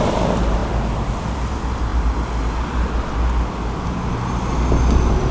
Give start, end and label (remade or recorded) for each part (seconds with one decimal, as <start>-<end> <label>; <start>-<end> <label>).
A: 0.0-5.3 recorded